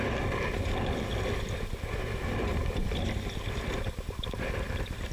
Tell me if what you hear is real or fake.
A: fake